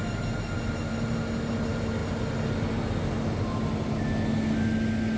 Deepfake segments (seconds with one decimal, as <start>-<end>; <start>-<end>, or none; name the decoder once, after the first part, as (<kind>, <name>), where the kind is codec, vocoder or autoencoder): none